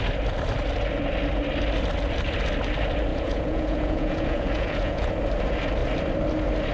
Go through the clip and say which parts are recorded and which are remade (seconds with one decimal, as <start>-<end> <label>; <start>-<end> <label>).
0.0-3.1 recorded; 3.1-5.1 remade; 5.1-6.7 recorded